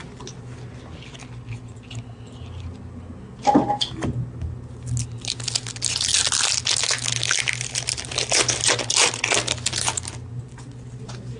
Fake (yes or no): no